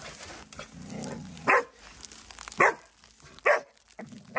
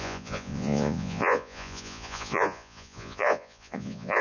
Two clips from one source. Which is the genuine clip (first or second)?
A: first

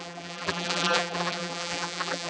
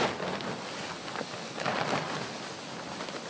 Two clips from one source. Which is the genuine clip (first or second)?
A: second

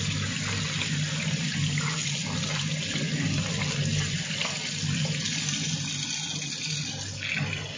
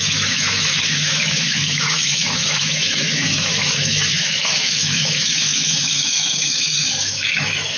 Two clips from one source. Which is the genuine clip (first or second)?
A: first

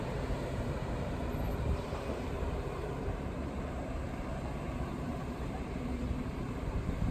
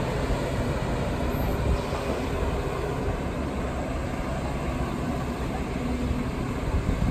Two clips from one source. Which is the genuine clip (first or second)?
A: second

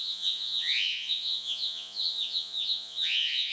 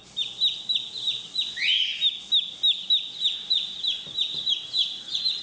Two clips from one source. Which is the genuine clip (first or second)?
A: second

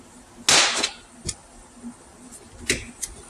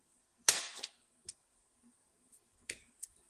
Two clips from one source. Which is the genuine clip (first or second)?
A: first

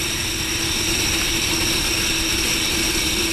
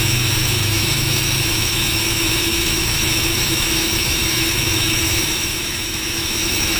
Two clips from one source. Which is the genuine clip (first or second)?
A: first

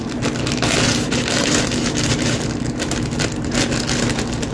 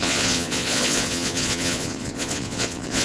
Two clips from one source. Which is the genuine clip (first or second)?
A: first